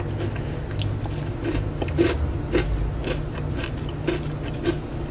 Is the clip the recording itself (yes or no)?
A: yes